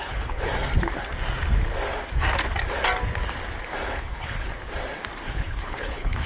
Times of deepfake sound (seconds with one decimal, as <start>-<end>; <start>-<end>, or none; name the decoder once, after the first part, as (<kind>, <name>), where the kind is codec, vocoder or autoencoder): 0.0-0.5 (codec, HILCodec); 4.0-4.5; 5.3-6.3

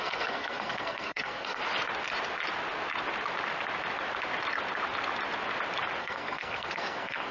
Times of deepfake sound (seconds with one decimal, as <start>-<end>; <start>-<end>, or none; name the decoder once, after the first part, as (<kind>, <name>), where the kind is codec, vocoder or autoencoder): 0.0-1.6 (codec, SNAC); 6.0-7.3

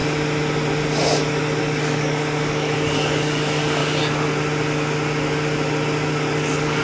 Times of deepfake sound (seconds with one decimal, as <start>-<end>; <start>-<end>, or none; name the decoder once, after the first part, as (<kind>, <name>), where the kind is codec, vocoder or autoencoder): 1.6-3.8 (codec, DAC); 6.1-6.8

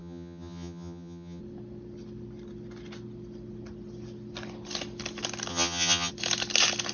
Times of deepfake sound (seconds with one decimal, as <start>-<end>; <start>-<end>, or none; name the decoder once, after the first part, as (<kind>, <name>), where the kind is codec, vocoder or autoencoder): 0.0-1.4 (vocoder, HiFi-GAN); 5.5-6.1

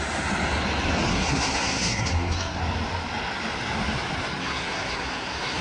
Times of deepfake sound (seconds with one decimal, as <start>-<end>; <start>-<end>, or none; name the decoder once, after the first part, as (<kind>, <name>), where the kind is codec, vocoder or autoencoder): 1.1-2.6 (codec, SNAC); 4.4-5.6

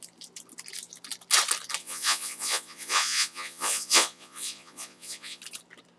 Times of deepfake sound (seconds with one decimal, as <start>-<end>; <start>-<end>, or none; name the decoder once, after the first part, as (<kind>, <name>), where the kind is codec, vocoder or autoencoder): 1.8-5.4 (vocoder, Vocos)